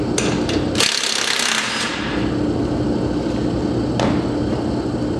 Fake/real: real